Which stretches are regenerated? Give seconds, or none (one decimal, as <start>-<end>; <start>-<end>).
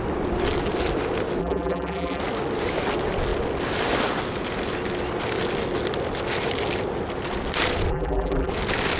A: 1.4-2.2; 7.9-8.5